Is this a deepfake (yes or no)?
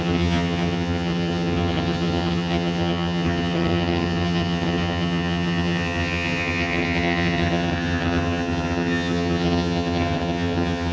yes